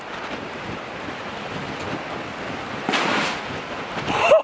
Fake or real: real